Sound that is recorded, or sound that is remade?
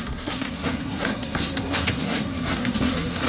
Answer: remade